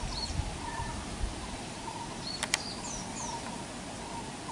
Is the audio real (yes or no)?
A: yes